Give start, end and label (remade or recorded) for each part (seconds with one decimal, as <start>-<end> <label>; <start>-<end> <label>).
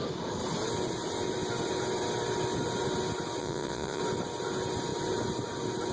0.0-3.4 recorded; 3.4-4.0 remade; 4.0-5.9 recorded